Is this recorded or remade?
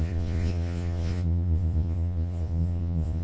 remade